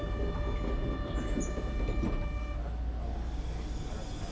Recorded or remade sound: recorded